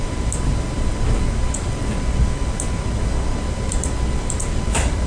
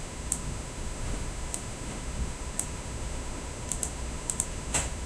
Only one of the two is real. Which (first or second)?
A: first